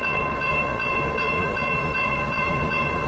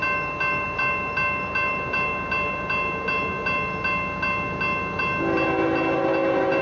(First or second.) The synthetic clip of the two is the first